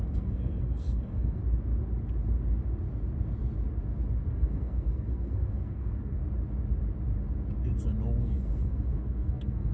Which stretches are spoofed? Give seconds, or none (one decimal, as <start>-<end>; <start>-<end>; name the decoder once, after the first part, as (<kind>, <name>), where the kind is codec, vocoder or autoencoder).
0.0-1.4 (codec, SNAC); 4.3-6.2; 8.2-9.7